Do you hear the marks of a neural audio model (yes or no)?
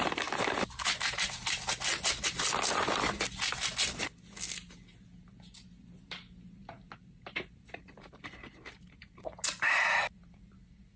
no